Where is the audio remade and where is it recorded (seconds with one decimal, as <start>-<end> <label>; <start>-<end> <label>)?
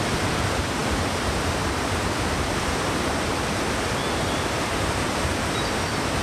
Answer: 0.0-6.2 recorded